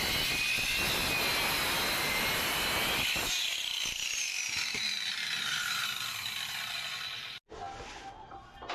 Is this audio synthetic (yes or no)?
no